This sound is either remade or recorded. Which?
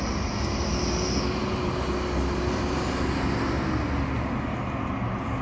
recorded